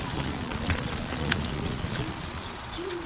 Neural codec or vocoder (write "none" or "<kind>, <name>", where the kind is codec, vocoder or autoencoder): vocoder, Vocos